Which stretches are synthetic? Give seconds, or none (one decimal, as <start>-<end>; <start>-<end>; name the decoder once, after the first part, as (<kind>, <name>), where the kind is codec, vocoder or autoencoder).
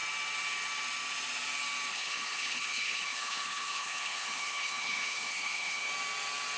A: 1.9-5.9 (codec, HILCodec)